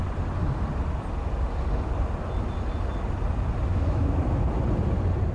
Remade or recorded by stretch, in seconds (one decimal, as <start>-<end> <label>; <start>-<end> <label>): 0.0-3.7 recorded; 3.7-4.2 remade; 4.2-5.3 recorded